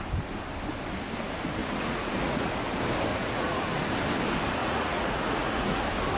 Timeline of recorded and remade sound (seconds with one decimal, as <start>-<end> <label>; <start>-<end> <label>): 0.0-1.6 recorded; 1.6-2.5 remade; 2.5-3.1 recorded; 3.1-3.6 remade; 3.6-4.6 recorded; 4.6-5.8 remade; 5.8-6.2 recorded